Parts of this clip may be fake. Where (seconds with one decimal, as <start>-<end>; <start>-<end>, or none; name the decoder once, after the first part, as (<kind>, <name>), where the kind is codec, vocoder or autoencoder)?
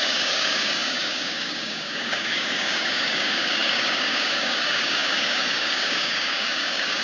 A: 0.0-7.0 (codec, DAC)